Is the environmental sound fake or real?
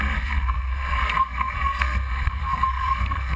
fake